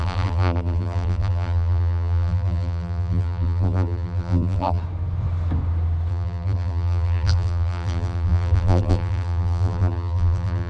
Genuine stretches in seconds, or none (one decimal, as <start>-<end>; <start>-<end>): 4.8-6.1